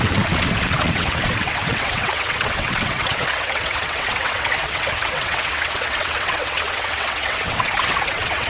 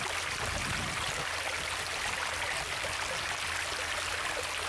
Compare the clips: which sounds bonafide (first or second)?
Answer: second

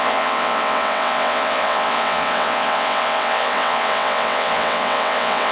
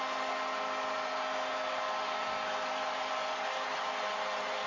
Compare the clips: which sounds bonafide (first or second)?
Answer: second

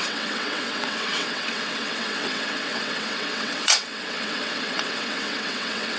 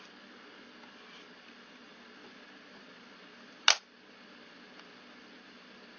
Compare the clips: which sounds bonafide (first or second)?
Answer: second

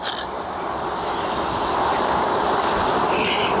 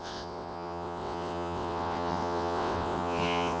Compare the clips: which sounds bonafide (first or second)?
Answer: first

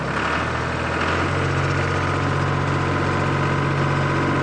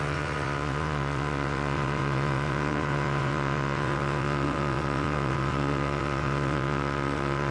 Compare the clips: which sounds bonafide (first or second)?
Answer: first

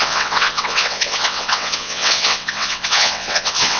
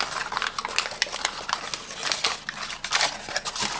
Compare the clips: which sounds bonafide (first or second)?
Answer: second